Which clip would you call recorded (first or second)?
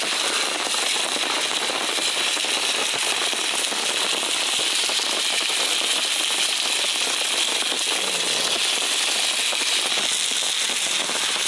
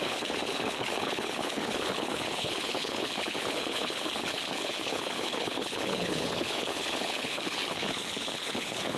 first